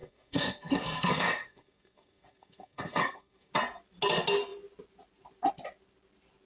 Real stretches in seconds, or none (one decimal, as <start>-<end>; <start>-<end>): 3.5-6.5